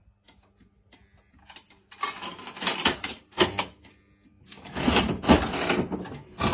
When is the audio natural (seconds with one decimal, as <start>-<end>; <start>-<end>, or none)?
0.0-4.3; 5.0-6.5